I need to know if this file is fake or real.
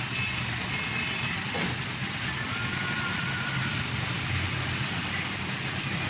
real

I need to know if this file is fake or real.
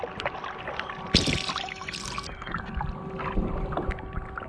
real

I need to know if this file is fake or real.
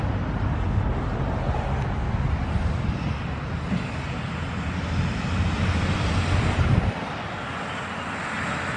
real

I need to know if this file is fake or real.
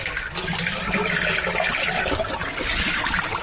real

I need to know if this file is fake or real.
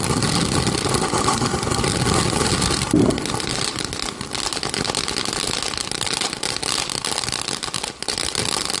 real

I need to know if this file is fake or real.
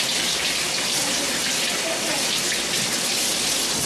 real